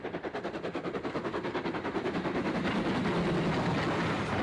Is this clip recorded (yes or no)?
yes